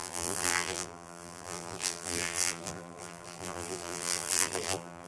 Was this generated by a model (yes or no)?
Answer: yes